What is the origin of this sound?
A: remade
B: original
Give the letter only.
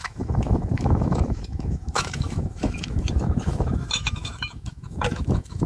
A